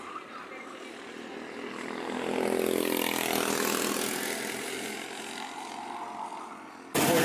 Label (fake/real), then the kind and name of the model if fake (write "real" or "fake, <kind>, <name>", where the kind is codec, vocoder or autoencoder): real